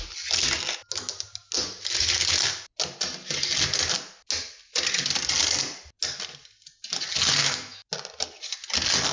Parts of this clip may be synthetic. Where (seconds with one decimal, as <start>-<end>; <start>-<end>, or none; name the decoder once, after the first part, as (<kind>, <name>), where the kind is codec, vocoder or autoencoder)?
7.4-7.9 (autoencoder, DAC-VAE)